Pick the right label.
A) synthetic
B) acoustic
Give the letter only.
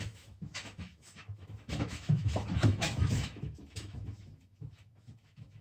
A